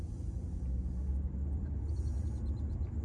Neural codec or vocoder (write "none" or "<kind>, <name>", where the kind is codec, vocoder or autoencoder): none